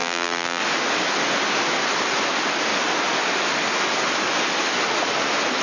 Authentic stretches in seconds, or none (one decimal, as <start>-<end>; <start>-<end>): 0.6-5.6